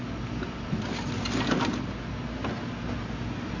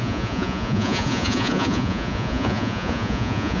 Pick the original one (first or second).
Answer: first